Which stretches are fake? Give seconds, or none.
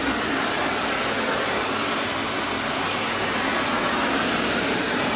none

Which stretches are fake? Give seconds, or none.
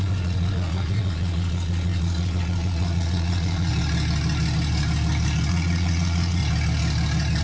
0.0-3.7 (vocoder, Vocos); 5.5-6.4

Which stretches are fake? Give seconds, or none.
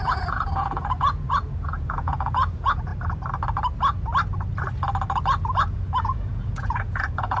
0.0-2.9 (vocoder, Vocos); 5.7-7.4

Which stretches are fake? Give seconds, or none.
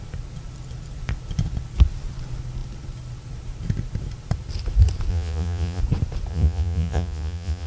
5.1-5.8 (vocoder, Vocos); 6.3-7.7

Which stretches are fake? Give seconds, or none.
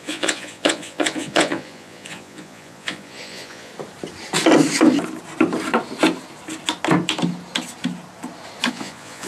0.0-3.7 (vocoder, Vocos); 8.7-9.3